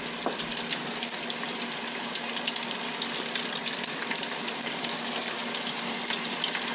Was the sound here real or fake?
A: real